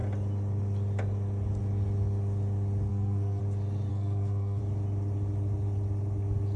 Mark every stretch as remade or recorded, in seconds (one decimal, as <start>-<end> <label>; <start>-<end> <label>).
0.0-2.9 recorded; 2.9-3.4 remade; 3.4-3.9 recorded; 3.9-4.6 remade; 4.6-6.6 recorded